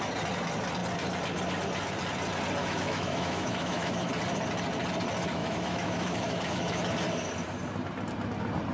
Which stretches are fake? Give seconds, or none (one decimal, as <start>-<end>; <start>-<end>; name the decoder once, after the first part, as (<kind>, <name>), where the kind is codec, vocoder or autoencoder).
2.6-4.1 (autoencoder, DAC-VAE); 5.4-6.8